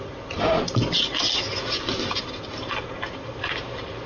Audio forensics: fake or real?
real